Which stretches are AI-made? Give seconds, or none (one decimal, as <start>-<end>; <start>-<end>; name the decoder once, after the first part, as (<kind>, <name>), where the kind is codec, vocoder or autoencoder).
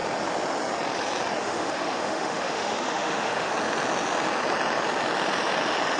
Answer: 1.4-3.5 (autoencoder, DAC-VAE)